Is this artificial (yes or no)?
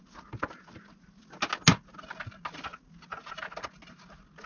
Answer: no